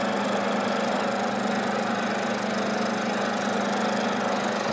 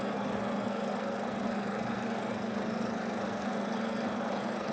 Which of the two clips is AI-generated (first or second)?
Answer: second